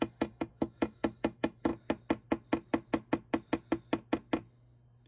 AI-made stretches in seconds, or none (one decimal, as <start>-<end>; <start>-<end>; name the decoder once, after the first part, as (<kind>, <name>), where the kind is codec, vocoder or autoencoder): 0.0-1.7 (autoencoder, DAC-VAE)